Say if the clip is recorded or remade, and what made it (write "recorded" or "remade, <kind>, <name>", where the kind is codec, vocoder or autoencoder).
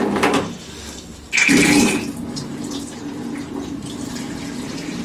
remade, vocoder, BigVGAN v2